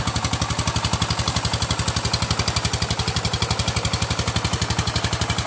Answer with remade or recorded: recorded